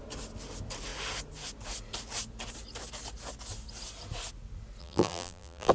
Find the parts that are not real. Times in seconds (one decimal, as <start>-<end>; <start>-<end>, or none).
4.8-5.7